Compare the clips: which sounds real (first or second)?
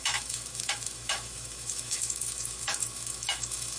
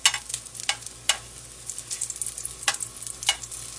second